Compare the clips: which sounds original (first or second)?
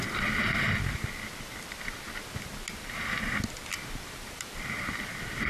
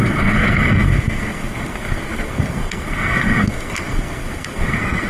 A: first